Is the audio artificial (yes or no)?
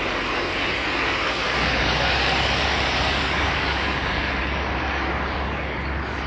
yes